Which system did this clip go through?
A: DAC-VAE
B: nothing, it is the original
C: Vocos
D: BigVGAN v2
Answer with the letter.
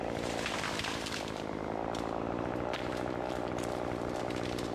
D